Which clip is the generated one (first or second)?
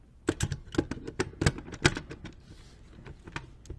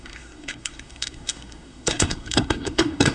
second